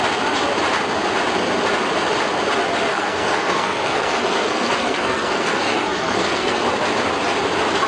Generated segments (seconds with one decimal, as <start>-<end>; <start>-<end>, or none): 2.9-6.6